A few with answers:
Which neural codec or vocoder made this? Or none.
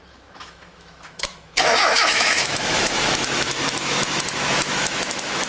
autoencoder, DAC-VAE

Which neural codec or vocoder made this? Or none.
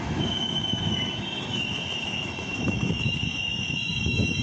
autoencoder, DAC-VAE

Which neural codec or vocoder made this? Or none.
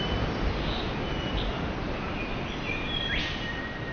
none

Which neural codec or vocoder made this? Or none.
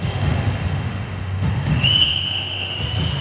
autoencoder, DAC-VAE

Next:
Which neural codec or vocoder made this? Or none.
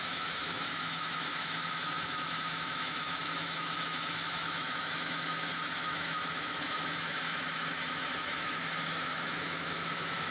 autoencoder, DAC-VAE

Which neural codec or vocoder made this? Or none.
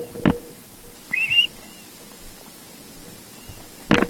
none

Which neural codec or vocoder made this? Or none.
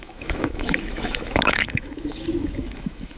autoencoder, DAC-VAE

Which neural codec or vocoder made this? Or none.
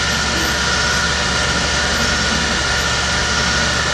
none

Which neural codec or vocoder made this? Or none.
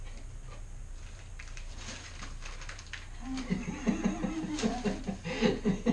none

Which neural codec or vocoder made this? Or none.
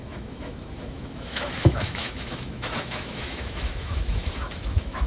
autoencoder, DAC-VAE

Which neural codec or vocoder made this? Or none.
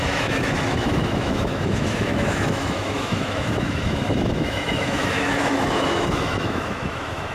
autoencoder, DAC-VAE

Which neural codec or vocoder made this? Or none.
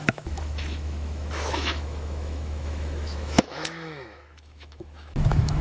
autoencoder, DAC-VAE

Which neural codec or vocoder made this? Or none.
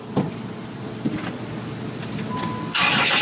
none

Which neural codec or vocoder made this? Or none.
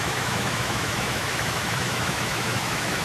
autoencoder, DAC-VAE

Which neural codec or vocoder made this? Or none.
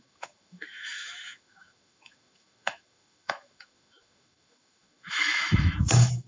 autoencoder, DAC-VAE